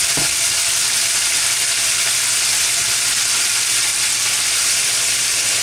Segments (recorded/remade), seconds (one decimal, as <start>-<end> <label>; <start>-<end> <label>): 0.0-0.6 remade; 0.6-3.4 recorded; 3.4-3.9 remade; 3.9-5.6 recorded